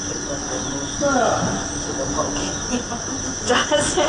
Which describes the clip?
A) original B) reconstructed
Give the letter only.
A